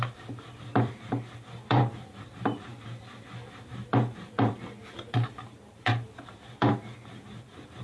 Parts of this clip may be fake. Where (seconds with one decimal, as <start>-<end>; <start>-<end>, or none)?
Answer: 0.0-7.8